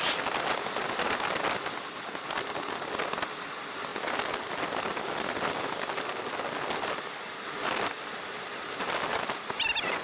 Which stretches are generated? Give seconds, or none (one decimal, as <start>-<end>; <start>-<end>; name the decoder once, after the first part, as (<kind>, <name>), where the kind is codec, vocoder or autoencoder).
none